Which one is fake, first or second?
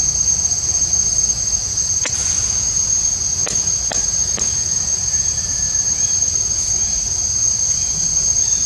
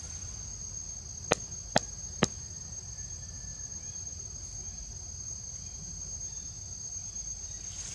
first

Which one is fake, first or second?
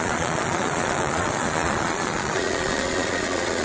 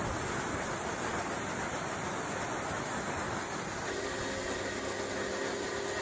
first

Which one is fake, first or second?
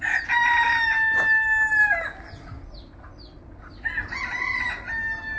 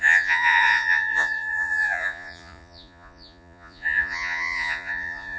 second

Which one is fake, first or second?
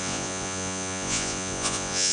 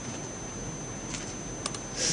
first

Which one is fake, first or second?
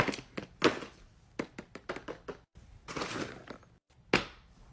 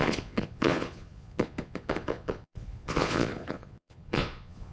second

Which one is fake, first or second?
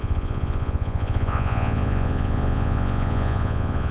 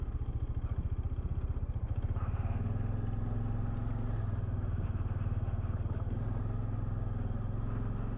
first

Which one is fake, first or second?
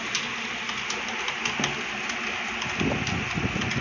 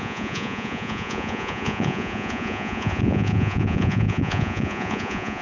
second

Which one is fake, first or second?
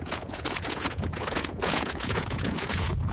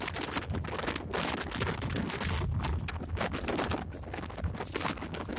first